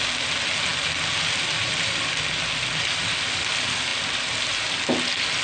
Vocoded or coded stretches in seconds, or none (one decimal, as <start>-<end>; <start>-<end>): none